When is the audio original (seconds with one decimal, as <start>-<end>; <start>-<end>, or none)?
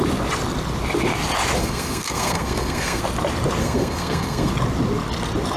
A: 0.0-1.6; 3.0-3.6; 4.5-5.6